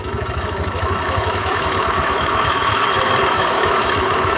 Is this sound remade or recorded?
remade